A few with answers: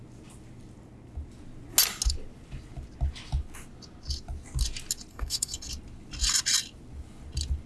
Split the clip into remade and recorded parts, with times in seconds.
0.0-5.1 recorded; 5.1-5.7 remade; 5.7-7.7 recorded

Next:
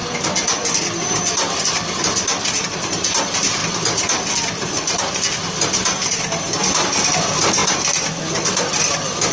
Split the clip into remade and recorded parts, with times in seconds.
0.0-9.3 recorded

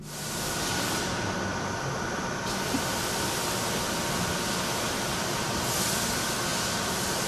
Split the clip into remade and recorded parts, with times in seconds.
0.0-7.3 recorded

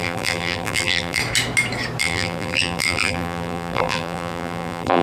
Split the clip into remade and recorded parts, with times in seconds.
0.0-1.2 remade; 1.2-2.0 recorded; 2.0-5.0 remade

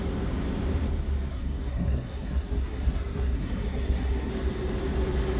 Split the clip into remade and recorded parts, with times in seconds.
0.0-1.3 recorded; 1.3-4.3 remade; 4.3-5.4 recorded